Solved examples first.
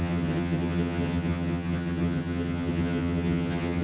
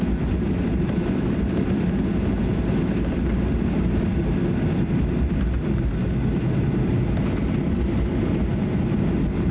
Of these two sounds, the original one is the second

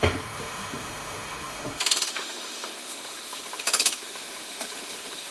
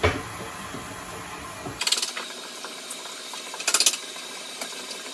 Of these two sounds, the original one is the second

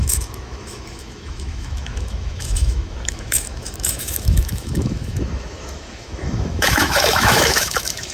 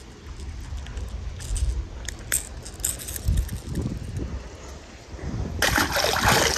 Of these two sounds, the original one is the second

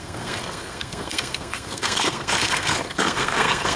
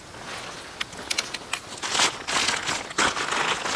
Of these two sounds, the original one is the second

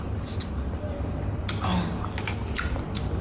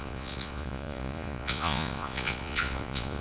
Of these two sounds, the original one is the first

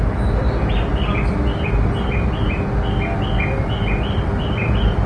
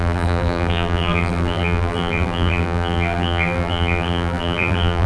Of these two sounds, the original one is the first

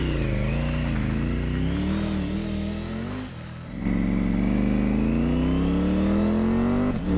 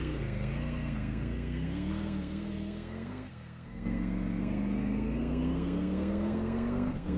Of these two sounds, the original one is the first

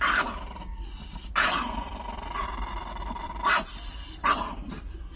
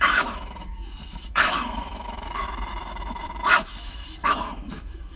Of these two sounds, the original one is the first